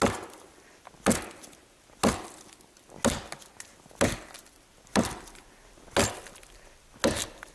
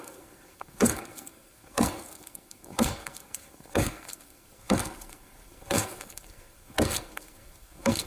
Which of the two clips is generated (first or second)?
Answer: second